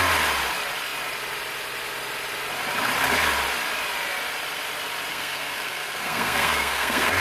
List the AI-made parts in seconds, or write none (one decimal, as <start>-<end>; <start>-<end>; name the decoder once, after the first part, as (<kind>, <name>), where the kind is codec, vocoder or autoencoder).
5.1-7.2 (codec, SNAC)